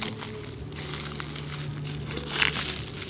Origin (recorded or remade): recorded